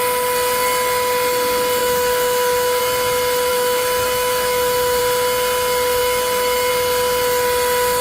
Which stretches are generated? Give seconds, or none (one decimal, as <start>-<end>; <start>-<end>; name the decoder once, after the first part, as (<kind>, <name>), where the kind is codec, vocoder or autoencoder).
1.8-2.8 (autoencoder, DAC-VAE); 3.5-5.0; 6.0-6.7